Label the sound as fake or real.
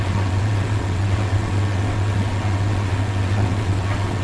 fake